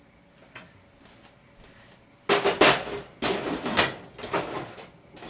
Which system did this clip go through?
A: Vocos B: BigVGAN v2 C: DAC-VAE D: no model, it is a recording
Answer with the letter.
D